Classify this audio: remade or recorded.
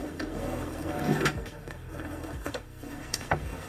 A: remade